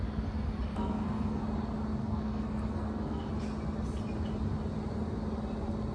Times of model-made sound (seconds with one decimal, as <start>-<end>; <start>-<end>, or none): 0.7-1.4; 2.0-3.3